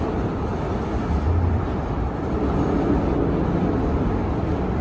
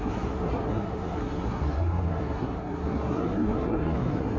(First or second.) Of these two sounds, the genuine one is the first